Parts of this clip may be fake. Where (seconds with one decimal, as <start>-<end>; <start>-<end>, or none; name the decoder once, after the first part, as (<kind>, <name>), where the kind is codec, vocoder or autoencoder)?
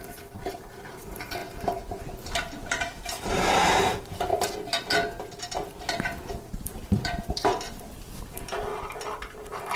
0.0-1.4 (vocoder, BigVGAN v2); 2.7-4.3; 6.4-8.7; 9.3-9.8